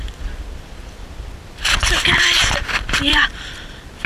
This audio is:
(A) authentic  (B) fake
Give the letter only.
B